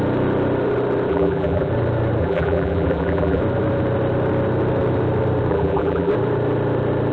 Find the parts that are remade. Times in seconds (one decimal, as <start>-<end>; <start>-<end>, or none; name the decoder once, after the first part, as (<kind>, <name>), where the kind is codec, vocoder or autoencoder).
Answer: 1.1-1.7 (vocoder, BigVGAN v2); 2.2-3.4; 5.5-6.1